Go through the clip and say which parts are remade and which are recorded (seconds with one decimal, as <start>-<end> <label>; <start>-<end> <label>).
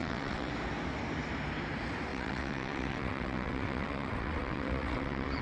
0.0-0.5 remade; 0.5-2.1 recorded; 2.1-5.4 remade